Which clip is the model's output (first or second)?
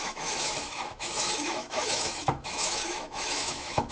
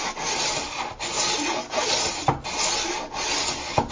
first